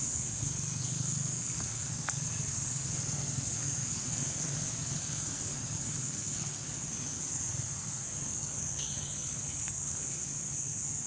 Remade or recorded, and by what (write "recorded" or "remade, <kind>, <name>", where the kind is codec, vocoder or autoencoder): remade, codec, SNAC